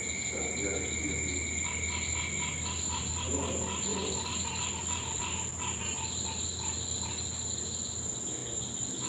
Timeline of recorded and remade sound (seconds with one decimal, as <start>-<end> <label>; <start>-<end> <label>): 0.0-9.1 recorded